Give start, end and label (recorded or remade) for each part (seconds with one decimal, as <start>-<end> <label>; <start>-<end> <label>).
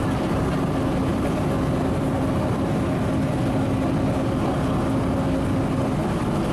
0.0-1.1 recorded; 1.1-3.1 remade; 3.1-6.5 recorded